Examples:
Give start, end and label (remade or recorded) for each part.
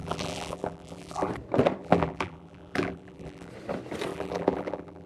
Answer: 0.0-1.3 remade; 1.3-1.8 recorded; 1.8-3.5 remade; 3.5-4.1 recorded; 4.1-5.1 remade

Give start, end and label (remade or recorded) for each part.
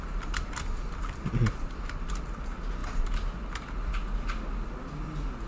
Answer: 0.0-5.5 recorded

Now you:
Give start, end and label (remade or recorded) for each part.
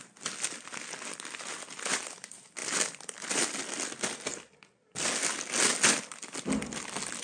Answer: 0.0-7.2 recorded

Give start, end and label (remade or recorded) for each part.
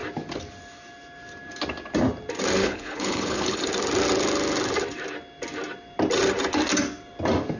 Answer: 0.0-2.6 recorded; 2.6-3.6 remade; 3.6-7.6 recorded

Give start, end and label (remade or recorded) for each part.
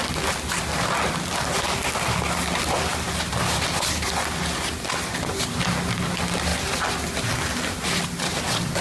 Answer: 0.0-8.8 recorded